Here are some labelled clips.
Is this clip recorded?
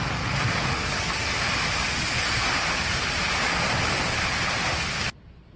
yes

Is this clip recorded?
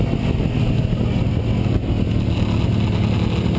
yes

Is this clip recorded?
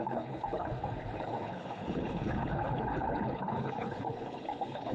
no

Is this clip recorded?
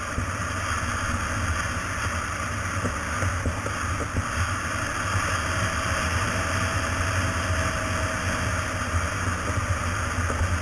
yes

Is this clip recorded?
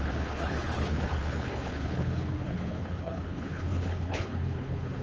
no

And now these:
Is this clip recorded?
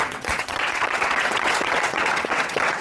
no